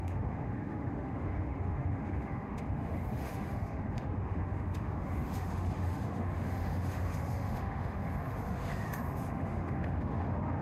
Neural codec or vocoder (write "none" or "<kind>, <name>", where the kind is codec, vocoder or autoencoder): autoencoder, DAC-VAE